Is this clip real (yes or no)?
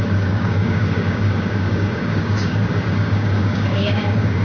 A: no